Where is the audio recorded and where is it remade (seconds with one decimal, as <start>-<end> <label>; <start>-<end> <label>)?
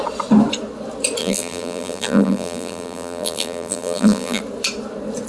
0.0-1.2 recorded; 1.2-4.4 remade; 4.4-5.3 recorded